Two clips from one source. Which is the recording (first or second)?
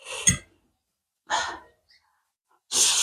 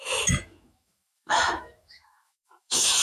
first